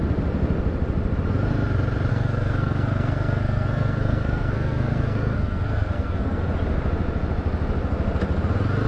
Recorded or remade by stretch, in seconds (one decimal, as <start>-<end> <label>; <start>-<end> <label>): 0.0-2.1 recorded; 2.1-6.4 remade; 6.4-8.9 recorded